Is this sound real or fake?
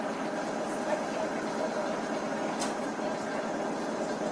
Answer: real